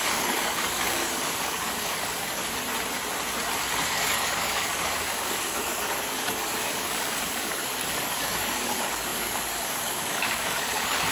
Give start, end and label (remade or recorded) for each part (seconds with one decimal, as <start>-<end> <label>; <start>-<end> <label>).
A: 0.0-2.4 remade; 2.4-3.9 recorded; 3.9-11.1 remade